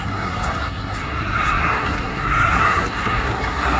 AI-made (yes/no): yes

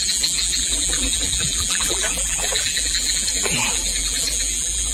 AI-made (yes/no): yes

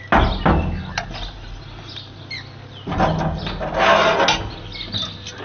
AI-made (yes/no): no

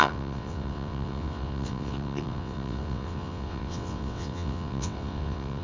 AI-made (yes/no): yes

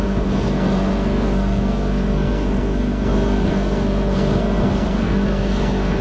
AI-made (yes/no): yes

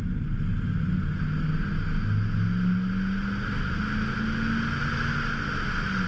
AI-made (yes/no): no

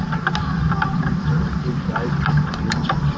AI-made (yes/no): no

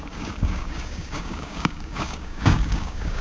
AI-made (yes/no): yes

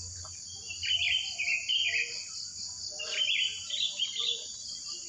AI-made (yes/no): no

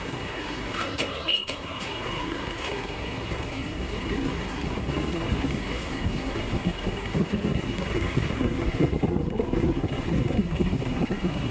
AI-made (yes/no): yes